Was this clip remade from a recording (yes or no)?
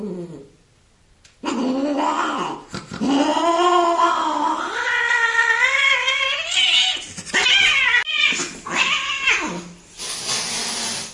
no